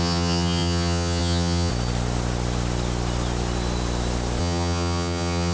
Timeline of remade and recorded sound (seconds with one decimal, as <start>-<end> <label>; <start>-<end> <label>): 0.0-1.7 remade; 1.7-4.4 recorded; 4.4-5.5 remade